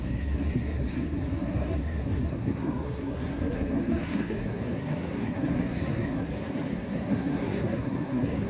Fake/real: fake